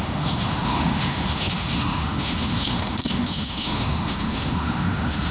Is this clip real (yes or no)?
no